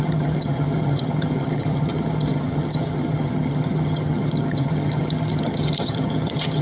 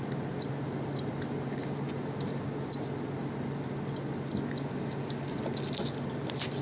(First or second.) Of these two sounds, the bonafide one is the second